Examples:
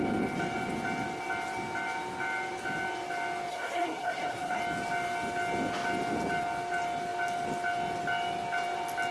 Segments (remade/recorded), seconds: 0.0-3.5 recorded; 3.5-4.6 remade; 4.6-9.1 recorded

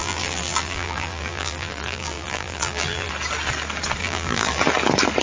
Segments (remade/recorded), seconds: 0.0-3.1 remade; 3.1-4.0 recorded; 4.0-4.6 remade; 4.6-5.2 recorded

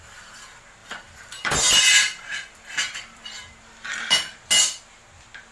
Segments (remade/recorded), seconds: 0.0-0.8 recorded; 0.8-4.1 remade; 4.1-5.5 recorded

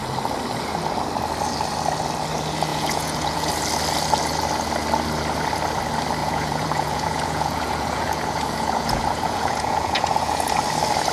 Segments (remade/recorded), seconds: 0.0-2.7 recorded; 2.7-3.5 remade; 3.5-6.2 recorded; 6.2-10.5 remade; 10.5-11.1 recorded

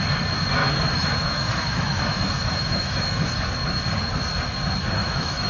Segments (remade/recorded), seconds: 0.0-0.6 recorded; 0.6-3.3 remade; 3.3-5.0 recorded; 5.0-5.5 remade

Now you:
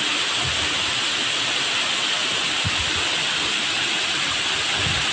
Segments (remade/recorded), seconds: 0.0-5.1 recorded

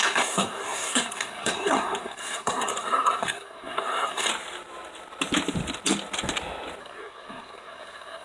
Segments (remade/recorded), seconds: 0.0-4.3 remade; 4.3-6.8 recorded; 6.8-8.2 remade